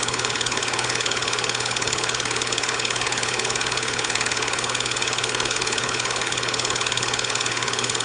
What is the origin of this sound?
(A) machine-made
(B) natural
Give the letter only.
A